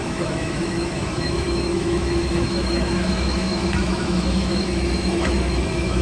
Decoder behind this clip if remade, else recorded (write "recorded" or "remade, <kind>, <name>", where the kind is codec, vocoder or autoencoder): remade, autoencoder, DAC-VAE